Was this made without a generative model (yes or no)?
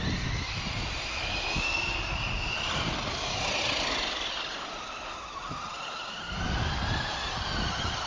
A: yes